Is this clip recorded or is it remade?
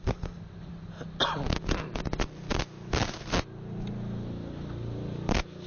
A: recorded